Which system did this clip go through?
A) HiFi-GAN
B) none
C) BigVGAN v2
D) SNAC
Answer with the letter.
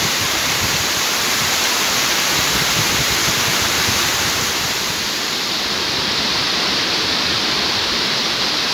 C